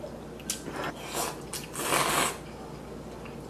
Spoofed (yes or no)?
no